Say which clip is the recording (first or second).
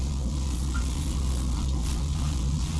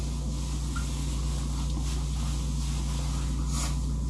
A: second